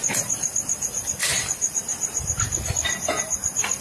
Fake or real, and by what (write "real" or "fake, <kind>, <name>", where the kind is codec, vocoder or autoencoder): real